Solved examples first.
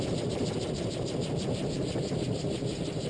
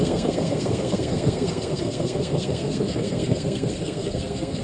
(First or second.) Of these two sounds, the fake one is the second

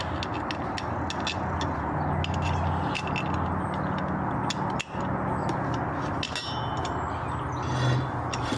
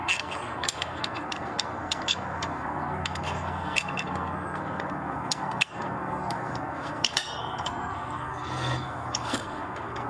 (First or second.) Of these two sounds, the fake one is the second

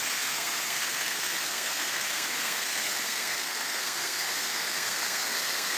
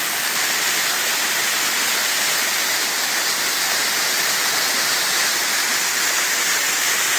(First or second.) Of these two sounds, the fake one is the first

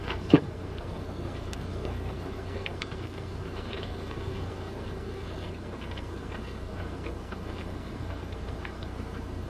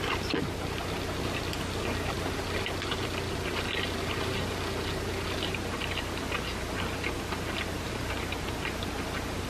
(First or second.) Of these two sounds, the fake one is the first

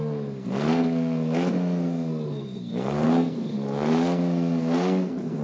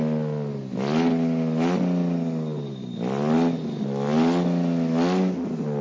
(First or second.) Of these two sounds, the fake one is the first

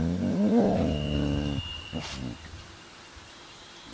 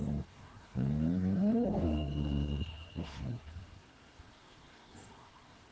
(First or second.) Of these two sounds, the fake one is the second